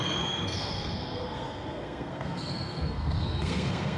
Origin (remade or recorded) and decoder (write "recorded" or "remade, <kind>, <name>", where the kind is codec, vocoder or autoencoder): remade, codec, SNAC